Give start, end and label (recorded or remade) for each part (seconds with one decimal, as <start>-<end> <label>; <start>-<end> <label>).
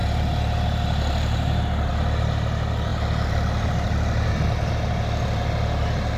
0.0-1.6 remade; 1.6-6.2 recorded